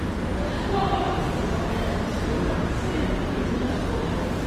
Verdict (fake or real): real